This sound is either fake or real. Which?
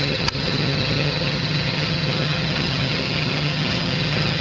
fake